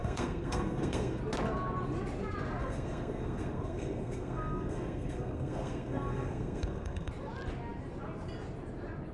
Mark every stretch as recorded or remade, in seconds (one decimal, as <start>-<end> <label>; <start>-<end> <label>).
0.0-1.2 remade; 1.2-2.6 recorded; 2.6-7.1 remade; 7.1-9.1 recorded